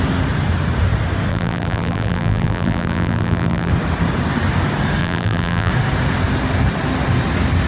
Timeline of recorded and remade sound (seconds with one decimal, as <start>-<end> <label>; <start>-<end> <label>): 0.0-1.3 recorded; 1.3-3.7 remade; 3.7-5.0 recorded; 5.0-5.7 remade; 5.7-7.7 recorded